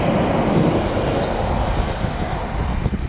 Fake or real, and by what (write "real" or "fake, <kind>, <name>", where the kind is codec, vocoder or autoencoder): real